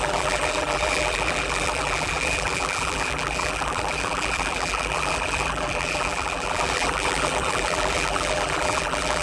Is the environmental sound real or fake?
fake